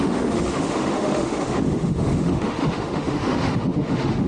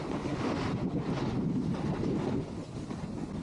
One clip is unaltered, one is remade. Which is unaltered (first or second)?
second